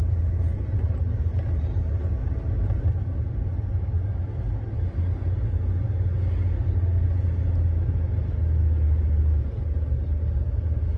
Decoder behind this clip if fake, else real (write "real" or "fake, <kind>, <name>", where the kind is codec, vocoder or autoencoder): real